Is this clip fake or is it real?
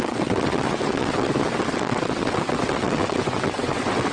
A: fake